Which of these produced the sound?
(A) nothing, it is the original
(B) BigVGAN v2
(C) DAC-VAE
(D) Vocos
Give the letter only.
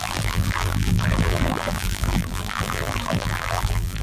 B